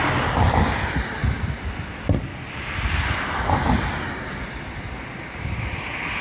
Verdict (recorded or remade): recorded